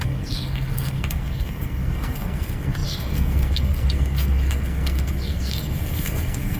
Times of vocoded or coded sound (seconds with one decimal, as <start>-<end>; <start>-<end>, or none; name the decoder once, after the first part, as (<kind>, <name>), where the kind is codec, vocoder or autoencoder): 0.0-6.6 (codec, SNAC)